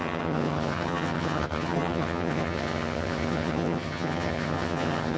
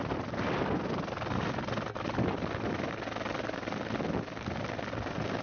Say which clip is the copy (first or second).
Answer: first